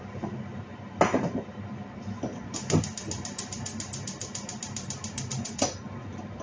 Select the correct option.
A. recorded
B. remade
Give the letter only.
A